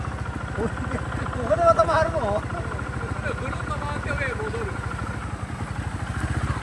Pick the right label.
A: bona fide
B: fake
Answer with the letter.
A